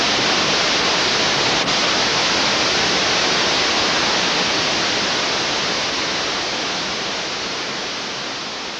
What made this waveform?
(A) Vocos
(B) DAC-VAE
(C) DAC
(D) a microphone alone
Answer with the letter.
D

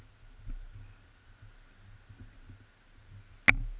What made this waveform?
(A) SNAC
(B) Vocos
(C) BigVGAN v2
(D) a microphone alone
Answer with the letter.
D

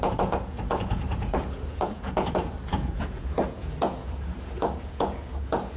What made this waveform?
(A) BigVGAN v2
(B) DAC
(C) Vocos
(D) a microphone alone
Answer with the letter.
C